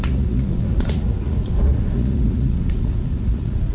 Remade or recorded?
remade